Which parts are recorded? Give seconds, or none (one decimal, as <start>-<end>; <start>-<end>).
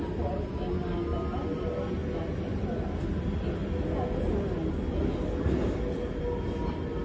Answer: 0.0-7.0